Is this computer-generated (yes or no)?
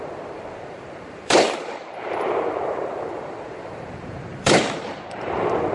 yes